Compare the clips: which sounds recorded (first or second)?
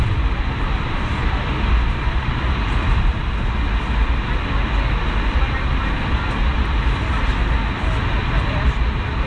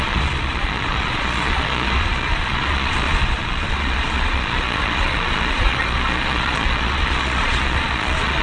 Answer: first